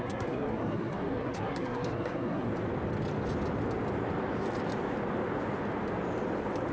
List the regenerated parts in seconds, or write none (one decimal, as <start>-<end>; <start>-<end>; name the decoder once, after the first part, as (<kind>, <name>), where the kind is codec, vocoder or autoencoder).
0.0-2.5 (codec, SNAC)